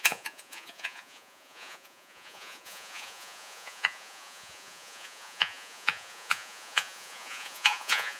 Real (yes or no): no